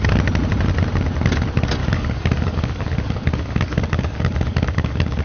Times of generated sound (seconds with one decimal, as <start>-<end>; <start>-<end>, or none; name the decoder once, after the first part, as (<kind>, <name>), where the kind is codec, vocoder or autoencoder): 1.8-5.2 (codec, DAC)